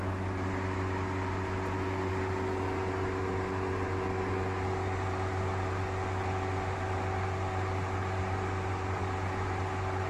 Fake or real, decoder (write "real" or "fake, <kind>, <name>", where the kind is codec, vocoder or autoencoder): real